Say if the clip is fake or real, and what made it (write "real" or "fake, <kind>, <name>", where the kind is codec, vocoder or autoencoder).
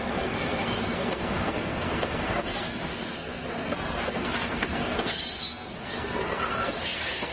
fake, codec, SNAC